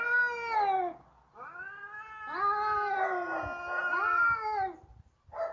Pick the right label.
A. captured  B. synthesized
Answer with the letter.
A